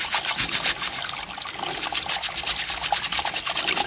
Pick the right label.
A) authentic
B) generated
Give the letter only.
A